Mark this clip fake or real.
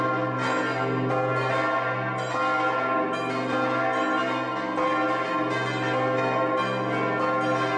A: real